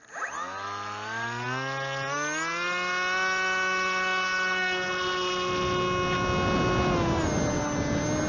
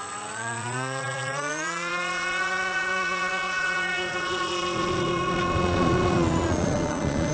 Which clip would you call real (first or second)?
first